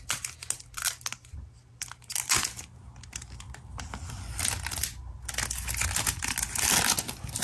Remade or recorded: recorded